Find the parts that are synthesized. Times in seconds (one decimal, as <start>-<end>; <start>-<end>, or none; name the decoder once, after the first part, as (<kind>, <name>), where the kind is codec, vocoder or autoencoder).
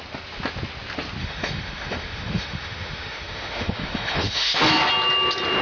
1.2-4.6 (autoencoder, DAC-VAE)